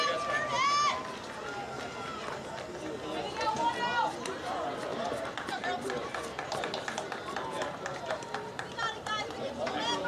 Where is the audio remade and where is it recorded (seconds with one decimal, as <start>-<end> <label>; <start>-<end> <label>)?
0.0-4.9 recorded; 4.9-9.7 remade; 9.7-10.1 recorded